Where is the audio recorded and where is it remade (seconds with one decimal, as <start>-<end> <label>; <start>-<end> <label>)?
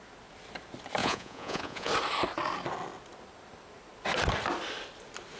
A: 0.0-1.0 recorded; 1.0-1.9 remade; 1.9-5.4 recorded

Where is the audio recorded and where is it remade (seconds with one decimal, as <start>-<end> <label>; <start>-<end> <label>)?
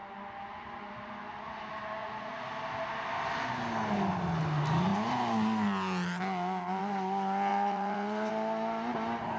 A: 0.0-2.0 recorded; 2.0-2.5 remade; 2.5-7.5 recorded; 7.5-8.3 remade; 8.3-9.4 recorded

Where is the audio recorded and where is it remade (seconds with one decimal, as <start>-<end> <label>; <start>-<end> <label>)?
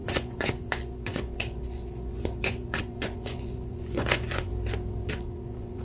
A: 0.0-4.5 remade; 4.5-5.1 recorded; 5.1-5.8 remade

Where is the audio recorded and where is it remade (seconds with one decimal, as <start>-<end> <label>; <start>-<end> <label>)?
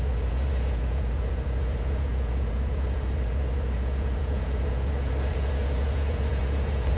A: 0.0-7.0 remade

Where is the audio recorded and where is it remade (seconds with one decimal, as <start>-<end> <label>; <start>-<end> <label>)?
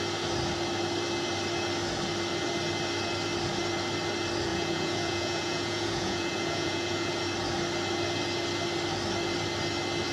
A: 0.0-4.5 recorded; 4.5-7.1 remade; 7.1-10.1 recorded